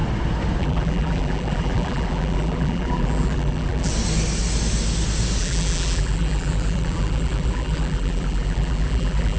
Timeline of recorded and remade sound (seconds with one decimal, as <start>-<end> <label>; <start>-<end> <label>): 0.0-0.6 recorded; 0.6-3.9 remade; 3.9-5.4 recorded; 5.4-9.4 remade

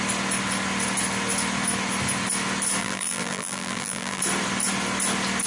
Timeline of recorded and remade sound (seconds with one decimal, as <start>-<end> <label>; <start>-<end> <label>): 0.0-2.8 recorded; 2.8-4.2 remade; 4.2-5.5 recorded